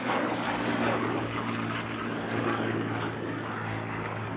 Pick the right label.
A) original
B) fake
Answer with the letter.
B